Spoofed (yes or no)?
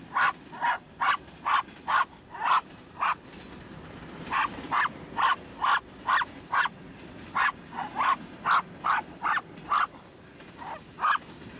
no